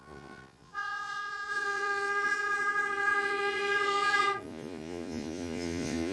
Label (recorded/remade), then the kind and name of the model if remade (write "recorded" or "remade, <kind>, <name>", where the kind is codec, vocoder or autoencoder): remade, vocoder, Vocos